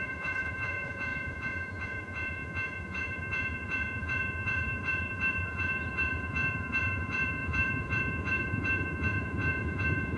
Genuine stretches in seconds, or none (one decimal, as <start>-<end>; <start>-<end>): none